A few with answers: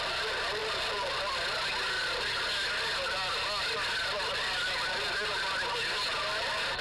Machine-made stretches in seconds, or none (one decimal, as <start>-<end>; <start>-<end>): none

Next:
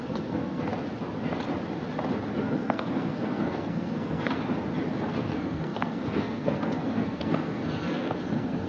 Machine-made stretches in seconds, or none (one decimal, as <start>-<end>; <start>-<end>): 0.0-0.7; 2.4-4.4; 4.9-8.7

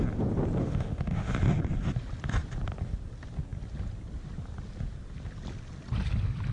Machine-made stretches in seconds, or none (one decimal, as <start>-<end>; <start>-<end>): 0.6-1.3